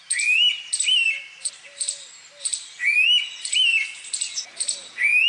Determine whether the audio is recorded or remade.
recorded